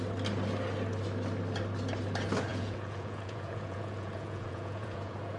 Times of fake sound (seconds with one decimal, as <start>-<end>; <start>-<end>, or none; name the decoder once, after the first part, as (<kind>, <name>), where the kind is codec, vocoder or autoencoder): 2.5-5.4 (vocoder, Vocos)